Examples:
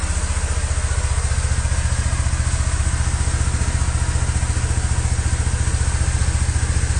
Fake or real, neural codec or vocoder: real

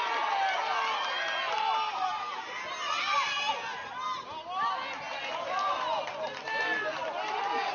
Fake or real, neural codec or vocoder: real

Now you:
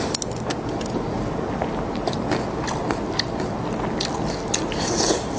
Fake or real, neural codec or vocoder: real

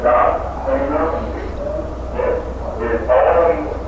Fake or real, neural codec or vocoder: fake, vocoder, BigVGAN v2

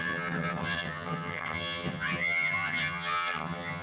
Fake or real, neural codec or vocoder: fake, vocoder, HiFi-GAN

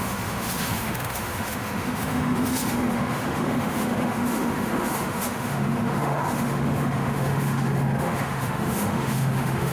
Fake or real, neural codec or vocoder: fake, autoencoder, DAC-VAE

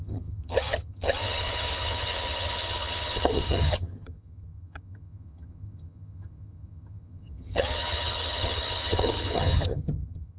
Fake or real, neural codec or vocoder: fake, vocoder, HiFi-GAN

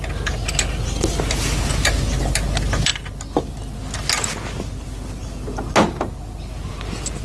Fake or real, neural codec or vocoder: real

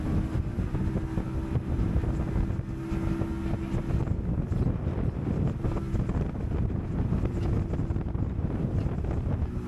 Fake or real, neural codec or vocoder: real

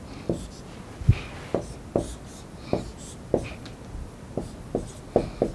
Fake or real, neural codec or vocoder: real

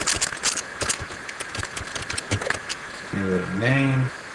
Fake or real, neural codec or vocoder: real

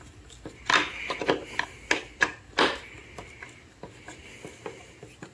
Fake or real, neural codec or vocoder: real